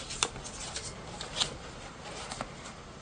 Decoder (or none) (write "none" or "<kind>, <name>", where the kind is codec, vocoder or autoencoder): none